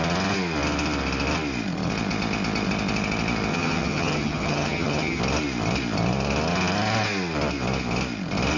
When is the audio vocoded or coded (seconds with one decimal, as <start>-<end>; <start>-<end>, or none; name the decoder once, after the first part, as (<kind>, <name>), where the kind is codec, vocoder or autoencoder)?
3.5-5.2 (vocoder, HiFi-GAN)

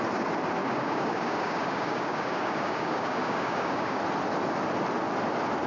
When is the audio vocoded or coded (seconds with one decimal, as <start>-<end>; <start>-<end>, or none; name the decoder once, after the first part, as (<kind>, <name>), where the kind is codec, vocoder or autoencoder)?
0.6-4.0 (codec, DAC)

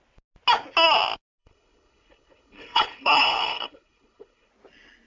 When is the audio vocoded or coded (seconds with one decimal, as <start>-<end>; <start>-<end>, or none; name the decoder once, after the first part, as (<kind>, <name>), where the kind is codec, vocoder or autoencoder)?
1.4-4.5 (codec, HILCodec)

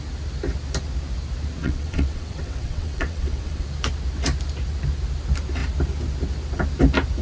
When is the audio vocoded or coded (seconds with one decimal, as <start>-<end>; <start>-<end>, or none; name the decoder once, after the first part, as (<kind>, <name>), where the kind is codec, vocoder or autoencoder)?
1.6-3.6 (vocoder, WaveNeXt)

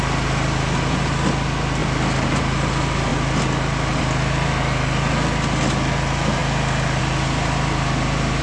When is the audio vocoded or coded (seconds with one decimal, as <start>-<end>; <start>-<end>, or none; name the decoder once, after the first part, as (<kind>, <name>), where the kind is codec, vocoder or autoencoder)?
1.8-2.7 (vocoder, BigVGAN v2)

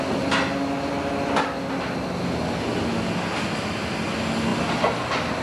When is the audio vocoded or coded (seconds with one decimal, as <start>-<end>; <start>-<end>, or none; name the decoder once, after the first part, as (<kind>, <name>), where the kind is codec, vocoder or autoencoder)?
none

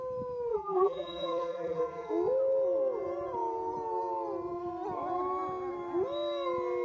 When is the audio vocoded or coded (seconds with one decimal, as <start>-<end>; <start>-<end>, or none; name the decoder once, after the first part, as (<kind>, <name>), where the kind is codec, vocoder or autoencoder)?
0.5-2.1 (vocoder, BigVGAN v2)

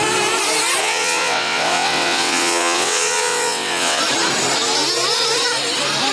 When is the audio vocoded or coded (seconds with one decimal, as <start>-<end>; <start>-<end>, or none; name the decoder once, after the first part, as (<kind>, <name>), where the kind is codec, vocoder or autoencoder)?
0.8-4.0 (vocoder, WaveNeXt)